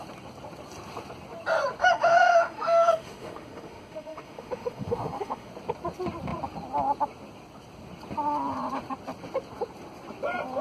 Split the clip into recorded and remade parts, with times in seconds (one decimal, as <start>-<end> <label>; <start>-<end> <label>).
0.0-1.8 recorded; 1.8-5.5 remade; 5.5-10.6 recorded